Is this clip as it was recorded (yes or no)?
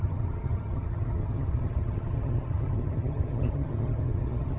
no